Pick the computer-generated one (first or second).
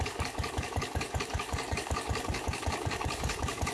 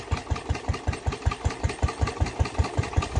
first